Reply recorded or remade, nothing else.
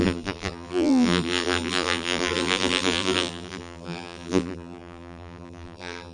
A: remade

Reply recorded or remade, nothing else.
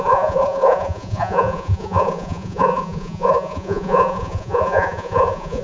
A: remade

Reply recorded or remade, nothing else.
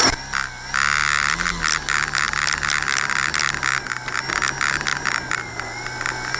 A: recorded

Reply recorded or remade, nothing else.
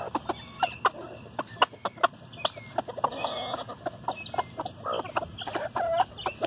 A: recorded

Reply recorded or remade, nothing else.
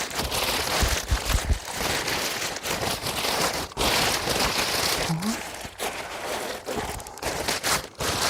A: recorded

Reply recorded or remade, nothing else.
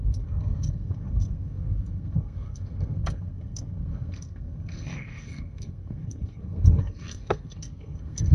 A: remade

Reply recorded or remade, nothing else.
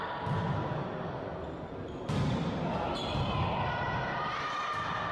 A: recorded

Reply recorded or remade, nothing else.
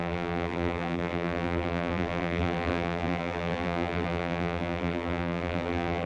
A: remade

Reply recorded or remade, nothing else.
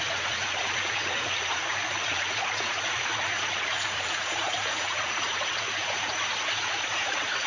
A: remade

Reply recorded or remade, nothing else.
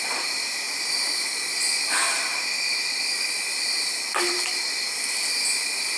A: recorded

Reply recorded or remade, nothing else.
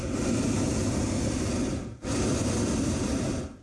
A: recorded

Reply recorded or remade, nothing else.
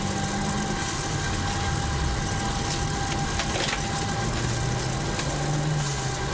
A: recorded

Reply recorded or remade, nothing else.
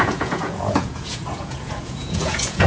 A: remade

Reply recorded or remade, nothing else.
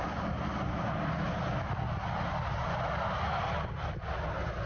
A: recorded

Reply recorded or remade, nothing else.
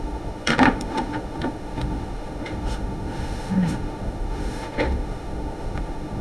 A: remade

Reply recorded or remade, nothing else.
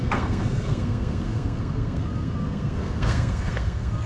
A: remade